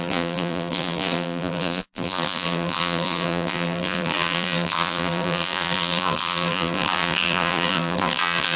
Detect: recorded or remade remade